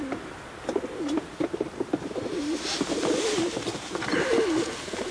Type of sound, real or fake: real